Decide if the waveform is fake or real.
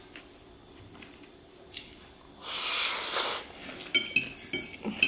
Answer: real